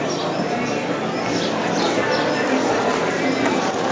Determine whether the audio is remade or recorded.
recorded